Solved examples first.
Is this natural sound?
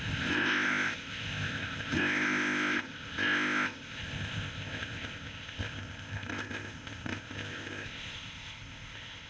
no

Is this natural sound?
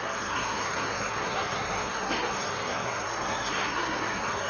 no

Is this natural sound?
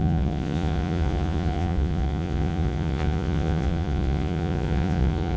no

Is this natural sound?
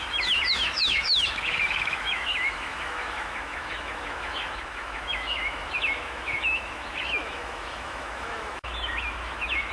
no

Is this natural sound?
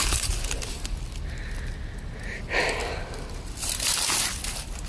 yes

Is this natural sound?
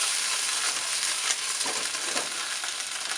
yes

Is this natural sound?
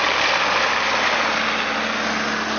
yes